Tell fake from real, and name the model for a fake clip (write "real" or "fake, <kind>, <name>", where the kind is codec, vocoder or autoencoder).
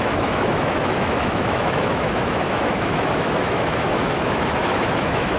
fake, autoencoder, DAC-VAE